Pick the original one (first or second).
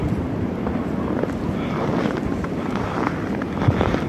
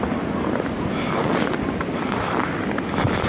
second